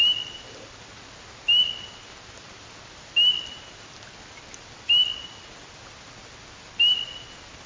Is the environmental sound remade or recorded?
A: recorded